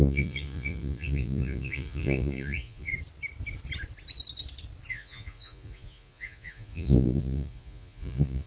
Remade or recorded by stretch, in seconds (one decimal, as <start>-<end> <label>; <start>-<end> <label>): 0.0-2.9 remade; 2.9-4.9 recorded; 4.9-8.5 remade